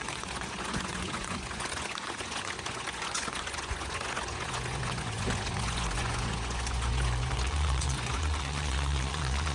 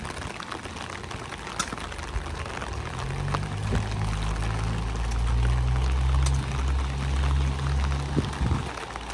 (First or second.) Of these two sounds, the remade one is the first